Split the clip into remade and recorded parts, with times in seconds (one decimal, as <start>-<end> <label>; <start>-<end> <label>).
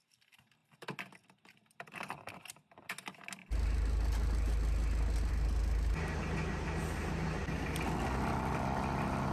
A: 0.0-9.3 recorded